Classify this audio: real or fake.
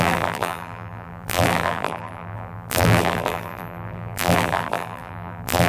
fake